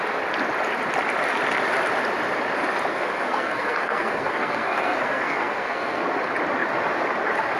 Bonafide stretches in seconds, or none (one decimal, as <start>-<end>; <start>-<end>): 0.0-2.9; 6.0-7.6